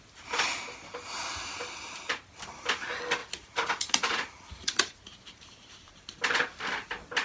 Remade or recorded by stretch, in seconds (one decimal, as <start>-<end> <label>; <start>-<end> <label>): 0.0-3.2 recorded; 3.2-5.4 remade; 5.4-7.2 recorded